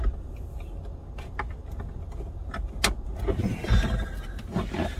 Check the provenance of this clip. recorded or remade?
recorded